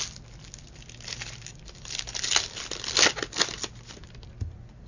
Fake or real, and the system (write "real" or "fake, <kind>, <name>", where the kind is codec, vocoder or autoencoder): real